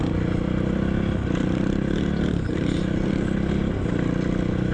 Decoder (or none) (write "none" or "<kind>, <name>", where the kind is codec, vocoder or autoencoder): none